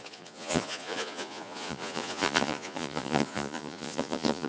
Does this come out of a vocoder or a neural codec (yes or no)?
yes